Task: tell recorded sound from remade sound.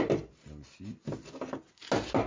recorded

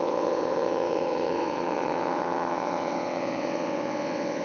remade